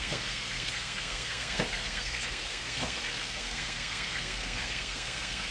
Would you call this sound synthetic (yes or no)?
yes